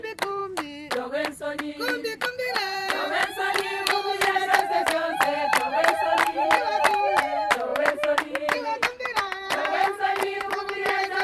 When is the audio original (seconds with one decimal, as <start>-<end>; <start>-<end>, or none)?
0.4-1.6; 7.7-8.2